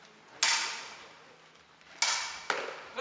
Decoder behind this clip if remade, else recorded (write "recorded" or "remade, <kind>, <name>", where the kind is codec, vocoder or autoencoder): recorded